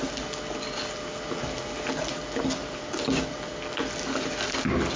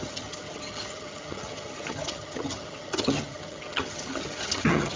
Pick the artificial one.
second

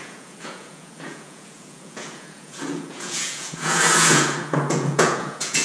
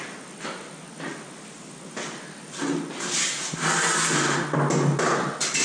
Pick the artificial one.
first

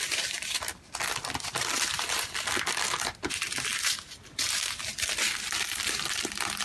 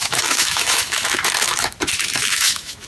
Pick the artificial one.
second